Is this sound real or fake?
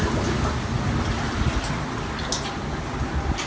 real